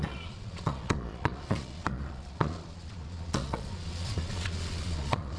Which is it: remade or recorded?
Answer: remade